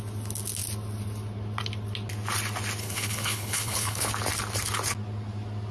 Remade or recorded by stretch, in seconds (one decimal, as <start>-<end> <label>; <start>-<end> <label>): 0.0-2.8 recorded; 2.8-4.1 remade; 4.1-5.7 recorded